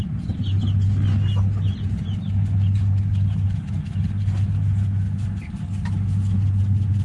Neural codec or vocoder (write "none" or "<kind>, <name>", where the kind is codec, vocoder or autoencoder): none